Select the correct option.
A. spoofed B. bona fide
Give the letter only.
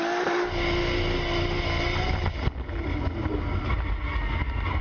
B